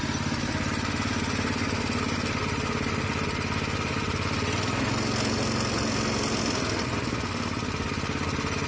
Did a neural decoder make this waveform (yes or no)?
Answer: no